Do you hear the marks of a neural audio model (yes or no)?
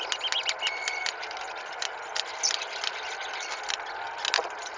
no